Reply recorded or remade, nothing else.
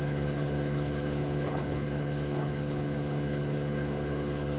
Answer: remade